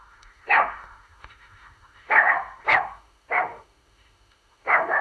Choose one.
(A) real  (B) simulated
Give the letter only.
B